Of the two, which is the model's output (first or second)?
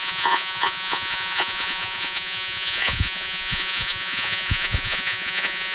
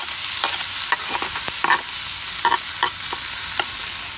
first